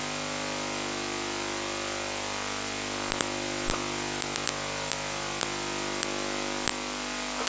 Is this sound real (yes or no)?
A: yes